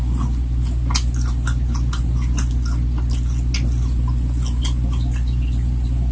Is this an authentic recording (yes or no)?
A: yes